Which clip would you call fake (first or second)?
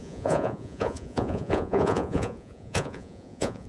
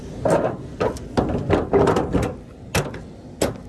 first